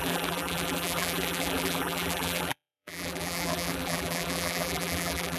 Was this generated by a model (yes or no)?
yes